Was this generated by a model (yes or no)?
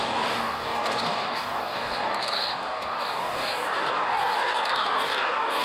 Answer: yes